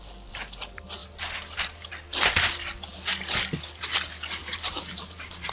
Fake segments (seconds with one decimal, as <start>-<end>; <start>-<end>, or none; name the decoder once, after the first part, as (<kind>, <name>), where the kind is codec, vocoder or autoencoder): 1.0-1.9 (vocoder, BigVGAN v2); 4.4-5.5